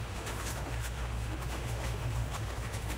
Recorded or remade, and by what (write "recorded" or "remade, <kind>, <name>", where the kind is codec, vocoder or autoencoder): remade, autoencoder, DAC-VAE